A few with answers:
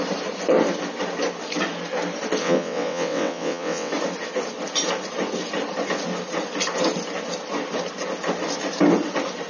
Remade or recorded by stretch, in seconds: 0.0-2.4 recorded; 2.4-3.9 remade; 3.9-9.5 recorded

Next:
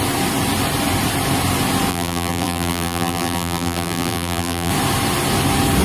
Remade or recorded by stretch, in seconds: 0.0-1.9 recorded; 1.9-4.7 remade; 4.7-5.8 recorded

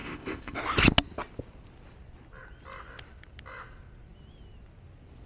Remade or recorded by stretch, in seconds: 0.0-0.6 remade; 0.6-5.3 recorded

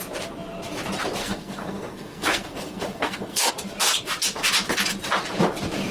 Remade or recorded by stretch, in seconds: 0.0-1.2 recorded; 1.2-3.5 remade; 3.5-5.9 recorded

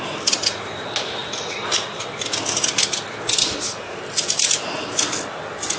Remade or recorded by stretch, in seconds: 0.0-5.8 recorded

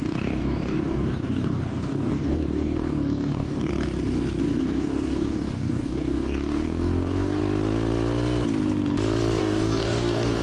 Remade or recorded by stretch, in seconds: 0.0-3.7 remade; 3.7-4.6 recorded; 4.6-7.4 remade; 7.4-9.4 recorded; 9.4-10.4 remade

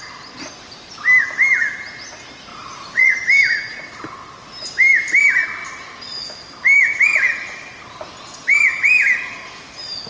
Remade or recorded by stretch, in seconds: 0.0-2.5 recorded; 2.5-3.1 remade; 3.1-10.1 recorded

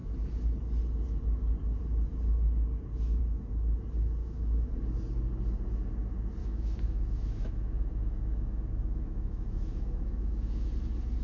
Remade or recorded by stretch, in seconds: 0.0-4.2 recorded; 4.2-4.7 remade; 4.7-6.4 recorded; 6.4-10.7 remade; 10.7-11.2 recorded